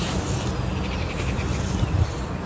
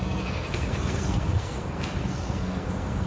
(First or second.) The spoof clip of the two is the second